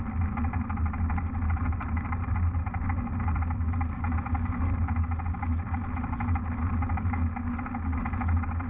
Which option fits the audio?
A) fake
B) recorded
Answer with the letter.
B